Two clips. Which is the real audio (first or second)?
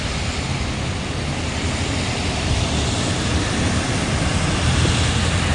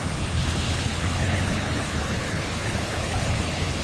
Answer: first